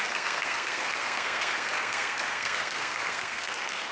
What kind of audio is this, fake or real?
fake